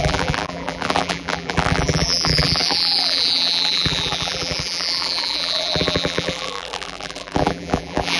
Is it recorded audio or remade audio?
remade